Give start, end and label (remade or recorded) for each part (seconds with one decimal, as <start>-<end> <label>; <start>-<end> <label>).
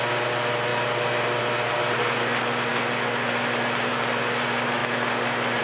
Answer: 0.0-5.6 recorded